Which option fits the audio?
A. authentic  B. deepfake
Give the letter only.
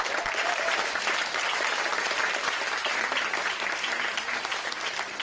A